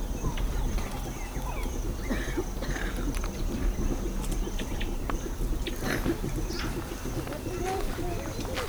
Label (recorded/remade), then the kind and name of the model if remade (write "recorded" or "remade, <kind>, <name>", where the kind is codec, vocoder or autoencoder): remade, vocoder, BigVGAN v2